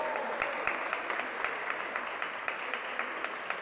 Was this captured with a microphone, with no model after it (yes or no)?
yes